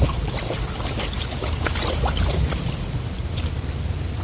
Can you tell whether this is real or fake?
real